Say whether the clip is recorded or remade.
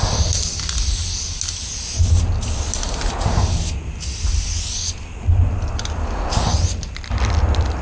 recorded